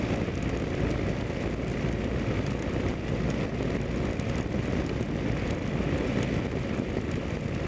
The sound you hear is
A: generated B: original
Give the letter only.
B